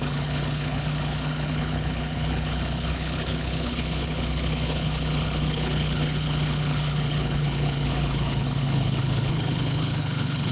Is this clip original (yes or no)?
no